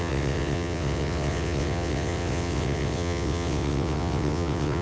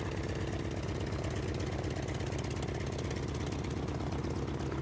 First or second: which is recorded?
second